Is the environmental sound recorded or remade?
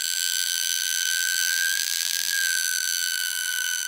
remade